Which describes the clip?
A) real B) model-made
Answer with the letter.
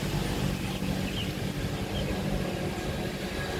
A